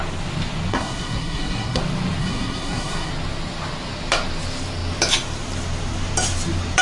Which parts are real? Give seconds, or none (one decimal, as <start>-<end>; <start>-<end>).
0.0-0.7; 1.8-2.2; 3.1-6.8